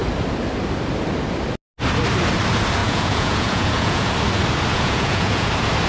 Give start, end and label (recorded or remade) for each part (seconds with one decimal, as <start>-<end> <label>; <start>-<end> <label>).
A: 0.0-2.8 recorded; 2.8-4.1 remade; 4.1-4.7 recorded; 4.7-5.5 remade; 5.5-5.9 recorded